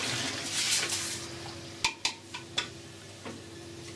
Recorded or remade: recorded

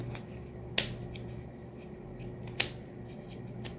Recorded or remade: recorded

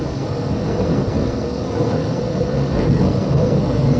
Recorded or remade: remade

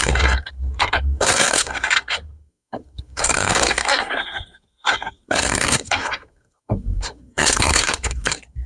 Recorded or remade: remade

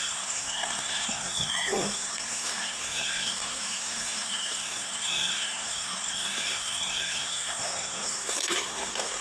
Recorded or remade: remade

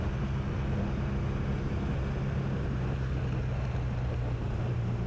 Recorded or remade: recorded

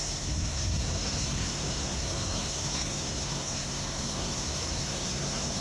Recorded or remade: remade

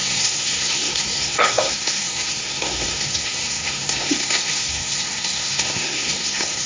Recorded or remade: remade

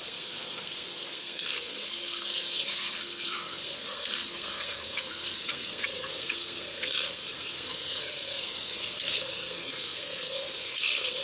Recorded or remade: remade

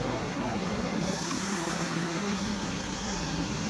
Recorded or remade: remade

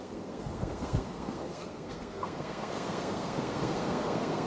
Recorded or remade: remade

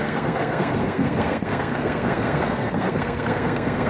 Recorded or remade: remade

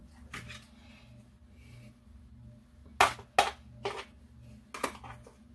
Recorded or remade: recorded